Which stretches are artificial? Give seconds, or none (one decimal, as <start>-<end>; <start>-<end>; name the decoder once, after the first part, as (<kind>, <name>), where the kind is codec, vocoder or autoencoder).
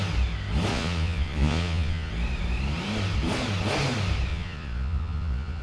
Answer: 0.7-2.1 (vocoder, Vocos); 4.3-5.6